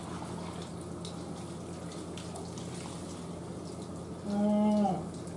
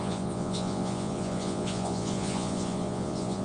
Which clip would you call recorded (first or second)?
first